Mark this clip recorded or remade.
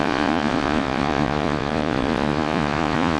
remade